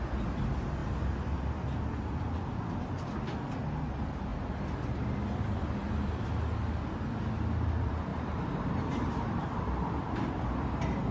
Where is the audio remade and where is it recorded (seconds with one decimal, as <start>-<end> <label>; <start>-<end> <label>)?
0.0-8.1 recorded; 8.1-9.3 remade; 9.3-11.1 recorded